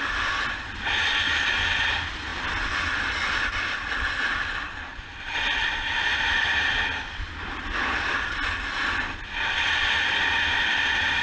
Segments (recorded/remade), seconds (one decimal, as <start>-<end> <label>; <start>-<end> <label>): 0.0-11.2 recorded